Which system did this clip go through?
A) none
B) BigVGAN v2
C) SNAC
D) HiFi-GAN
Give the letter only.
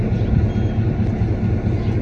A